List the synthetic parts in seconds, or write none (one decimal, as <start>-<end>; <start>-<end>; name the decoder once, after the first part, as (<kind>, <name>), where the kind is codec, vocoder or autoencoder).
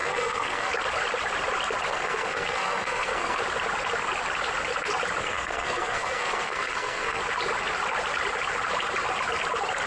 0.0-0.7 (codec, SNAC); 1.9-3.4; 5.2-7.2